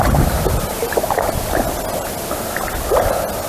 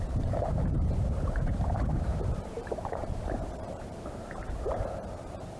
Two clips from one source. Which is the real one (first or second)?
first